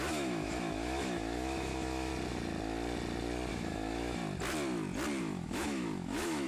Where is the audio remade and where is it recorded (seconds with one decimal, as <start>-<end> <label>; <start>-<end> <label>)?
0.0-2.1 remade; 2.1-3.5 recorded; 3.5-4.2 remade; 4.2-5.2 recorded; 5.2-6.5 remade